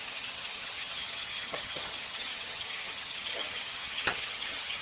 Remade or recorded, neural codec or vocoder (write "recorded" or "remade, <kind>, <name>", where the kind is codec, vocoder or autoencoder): remade, vocoder, HiFi-GAN